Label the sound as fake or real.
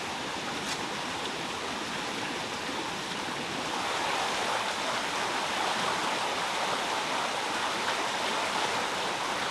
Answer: real